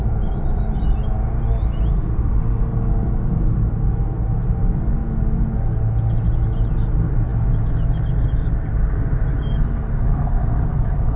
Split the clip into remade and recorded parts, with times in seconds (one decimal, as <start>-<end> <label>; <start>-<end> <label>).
0.0-11.2 recorded